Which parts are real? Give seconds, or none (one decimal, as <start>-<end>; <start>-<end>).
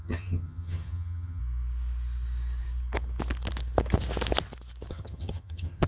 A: 1.4-4.9